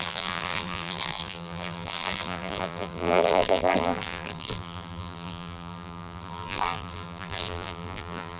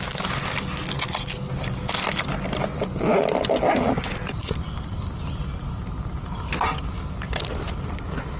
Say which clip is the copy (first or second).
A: first